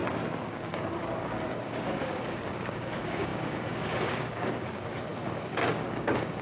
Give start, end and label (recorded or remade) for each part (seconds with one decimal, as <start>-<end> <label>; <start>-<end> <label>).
0.0-0.5 recorded; 0.5-6.4 remade